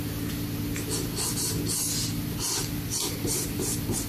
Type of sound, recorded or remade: recorded